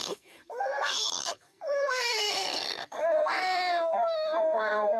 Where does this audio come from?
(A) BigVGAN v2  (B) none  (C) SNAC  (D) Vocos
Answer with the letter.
C